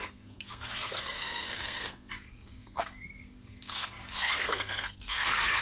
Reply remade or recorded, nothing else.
remade